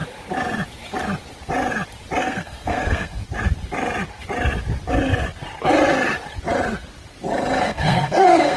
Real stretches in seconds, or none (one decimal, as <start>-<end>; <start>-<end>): 0.0-2.2; 3.2-7.6

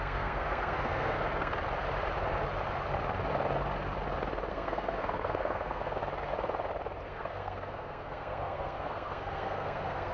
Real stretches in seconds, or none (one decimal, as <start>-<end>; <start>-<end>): 1.5-4.5; 6.0-7.0

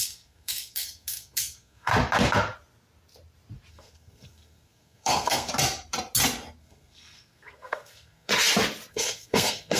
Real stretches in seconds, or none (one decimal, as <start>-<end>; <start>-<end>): 1.9-3.7; 5.5-6.6; 8.3-8.9

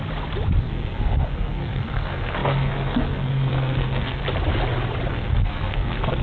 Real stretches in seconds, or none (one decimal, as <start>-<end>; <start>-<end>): 0.0-0.6; 4.2-5.1

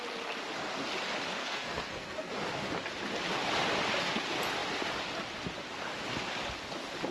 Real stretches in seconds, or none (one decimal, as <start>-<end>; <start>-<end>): 0.0-1.4; 2.3-7.1

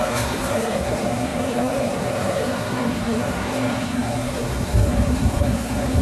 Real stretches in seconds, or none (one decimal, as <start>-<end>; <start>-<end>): none

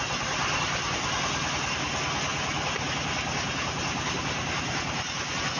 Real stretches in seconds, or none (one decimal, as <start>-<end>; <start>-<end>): 0.0-5.6